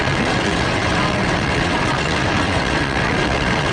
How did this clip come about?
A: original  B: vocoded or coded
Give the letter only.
B